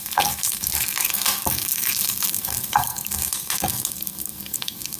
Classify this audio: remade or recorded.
remade